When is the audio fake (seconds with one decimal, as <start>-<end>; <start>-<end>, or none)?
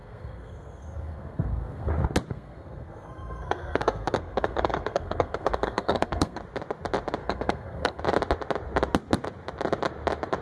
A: 0.0-1.9; 2.3-6.4; 7.2-8.0